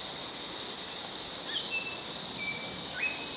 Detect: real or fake real